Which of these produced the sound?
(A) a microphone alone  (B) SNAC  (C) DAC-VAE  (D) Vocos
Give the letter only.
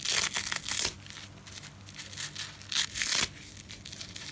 A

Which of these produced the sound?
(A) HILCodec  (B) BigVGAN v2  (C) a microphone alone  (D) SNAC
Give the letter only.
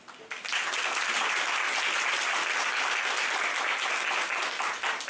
C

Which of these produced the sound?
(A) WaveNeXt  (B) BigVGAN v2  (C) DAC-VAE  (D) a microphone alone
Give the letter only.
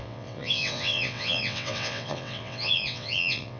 A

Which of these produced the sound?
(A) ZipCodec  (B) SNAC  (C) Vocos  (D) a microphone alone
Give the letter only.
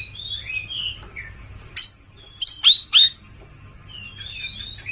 D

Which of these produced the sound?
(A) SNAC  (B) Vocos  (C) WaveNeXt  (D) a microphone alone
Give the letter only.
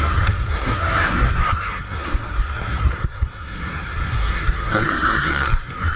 A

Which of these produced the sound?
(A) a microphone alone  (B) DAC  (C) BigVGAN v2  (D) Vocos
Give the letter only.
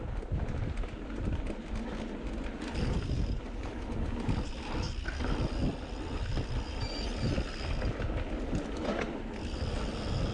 A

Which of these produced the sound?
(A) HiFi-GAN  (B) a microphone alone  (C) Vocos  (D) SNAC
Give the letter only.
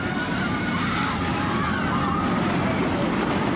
B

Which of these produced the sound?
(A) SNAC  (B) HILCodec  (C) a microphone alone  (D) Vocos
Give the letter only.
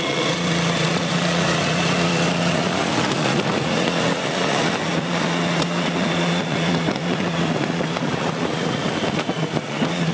D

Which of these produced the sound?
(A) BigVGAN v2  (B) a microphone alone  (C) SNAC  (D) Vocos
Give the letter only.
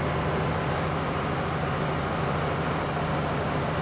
B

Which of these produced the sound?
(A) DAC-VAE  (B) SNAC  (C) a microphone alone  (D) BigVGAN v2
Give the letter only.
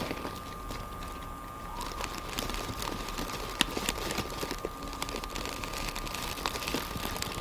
C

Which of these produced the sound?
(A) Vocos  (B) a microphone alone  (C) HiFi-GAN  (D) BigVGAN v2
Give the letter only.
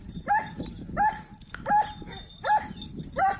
B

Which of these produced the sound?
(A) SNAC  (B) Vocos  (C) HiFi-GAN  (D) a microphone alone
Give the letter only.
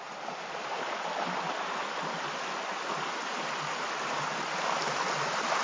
D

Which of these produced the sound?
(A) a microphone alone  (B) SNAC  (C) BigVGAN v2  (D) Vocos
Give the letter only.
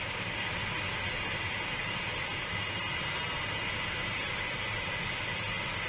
A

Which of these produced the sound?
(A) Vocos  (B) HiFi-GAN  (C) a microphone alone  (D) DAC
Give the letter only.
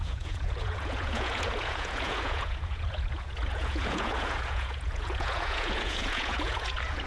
A